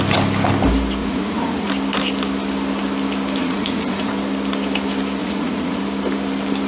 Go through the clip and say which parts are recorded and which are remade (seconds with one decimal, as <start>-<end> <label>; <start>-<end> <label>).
0.0-1.0 recorded; 1.0-1.7 remade; 1.7-3.4 recorded; 3.4-4.1 remade; 4.1-5.2 recorded; 5.2-5.8 remade; 5.8-6.7 recorded